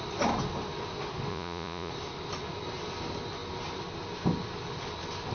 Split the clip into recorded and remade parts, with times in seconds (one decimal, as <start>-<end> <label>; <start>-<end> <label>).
0.0-1.3 recorded; 1.3-1.9 remade; 1.9-5.3 recorded